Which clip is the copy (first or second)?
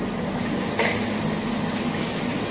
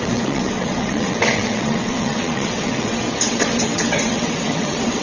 second